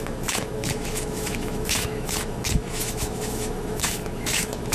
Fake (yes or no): yes